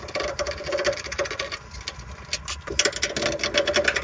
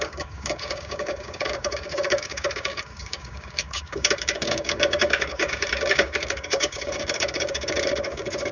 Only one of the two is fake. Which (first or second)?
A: second